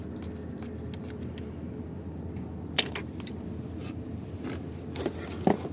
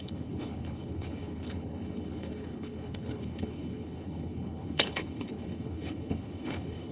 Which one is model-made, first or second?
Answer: second